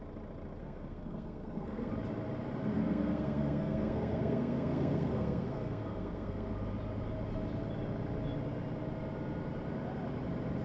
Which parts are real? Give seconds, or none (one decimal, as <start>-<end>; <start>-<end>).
0.0-0.6; 1.9-2.7; 6.5-10.6